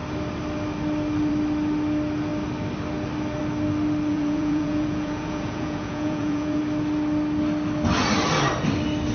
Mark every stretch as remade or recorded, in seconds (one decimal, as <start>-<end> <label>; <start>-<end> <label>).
0.0-4.1 recorded; 4.1-6.6 remade; 6.6-9.1 recorded